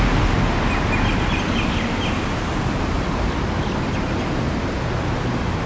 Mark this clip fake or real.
real